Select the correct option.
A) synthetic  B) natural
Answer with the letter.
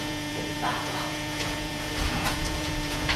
A